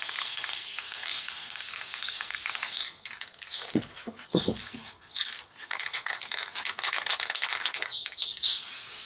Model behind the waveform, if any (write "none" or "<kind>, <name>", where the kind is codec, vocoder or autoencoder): codec, SNAC